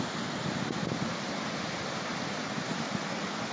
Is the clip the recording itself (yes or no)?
yes